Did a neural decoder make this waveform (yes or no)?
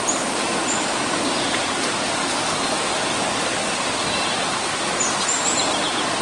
no